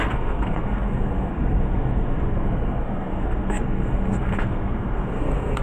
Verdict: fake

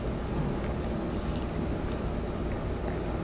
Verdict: real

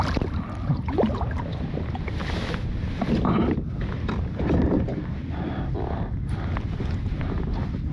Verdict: real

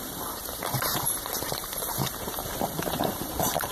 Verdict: fake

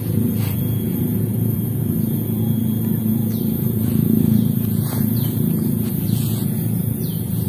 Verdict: fake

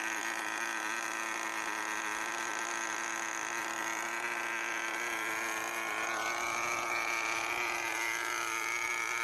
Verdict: real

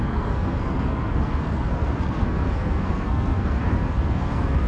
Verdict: fake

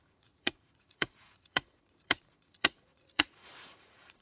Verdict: fake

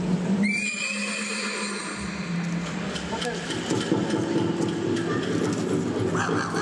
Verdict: real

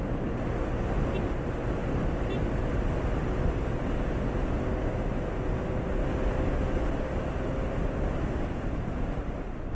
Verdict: real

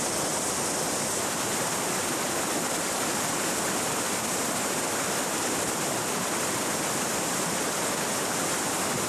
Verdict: fake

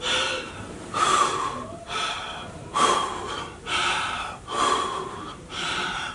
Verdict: fake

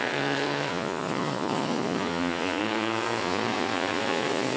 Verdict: fake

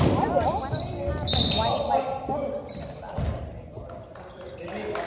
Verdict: real